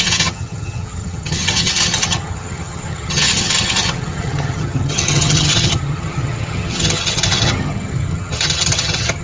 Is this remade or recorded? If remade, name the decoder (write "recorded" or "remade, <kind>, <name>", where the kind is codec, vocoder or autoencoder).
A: remade, vocoder, HiFi-GAN